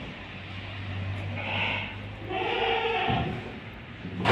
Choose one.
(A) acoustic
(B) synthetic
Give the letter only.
A